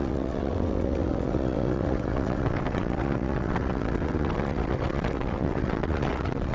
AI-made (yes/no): yes